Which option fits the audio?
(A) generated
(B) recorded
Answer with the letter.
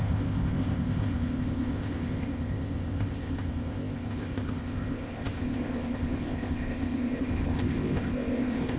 A